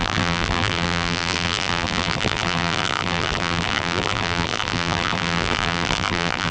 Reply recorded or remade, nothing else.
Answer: remade